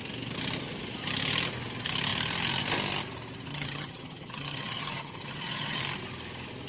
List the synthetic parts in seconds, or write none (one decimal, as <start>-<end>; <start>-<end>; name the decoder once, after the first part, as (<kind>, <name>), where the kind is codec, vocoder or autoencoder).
3.5-5.8 (vocoder, HiFi-GAN)

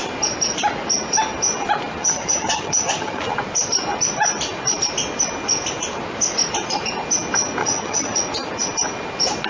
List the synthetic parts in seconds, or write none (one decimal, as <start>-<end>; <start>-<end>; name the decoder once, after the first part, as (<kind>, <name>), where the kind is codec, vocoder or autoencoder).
2.0-3.2 (vocoder, HiFi-GAN); 7.6-8.2

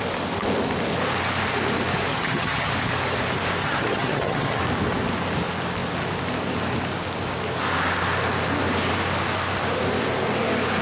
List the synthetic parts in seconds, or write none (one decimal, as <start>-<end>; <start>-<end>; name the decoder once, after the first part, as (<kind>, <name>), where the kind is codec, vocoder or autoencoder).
2.1-2.7 (vocoder, HiFi-GAN); 3.6-4.6